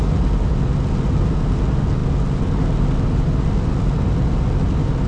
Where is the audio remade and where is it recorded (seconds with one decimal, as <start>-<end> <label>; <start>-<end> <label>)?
0.0-5.1 recorded